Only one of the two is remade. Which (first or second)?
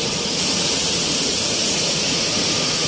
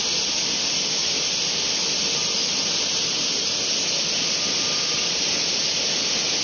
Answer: first